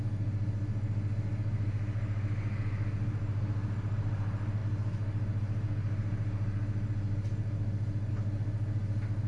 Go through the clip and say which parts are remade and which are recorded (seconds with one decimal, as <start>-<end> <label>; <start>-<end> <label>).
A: 0.0-9.3 recorded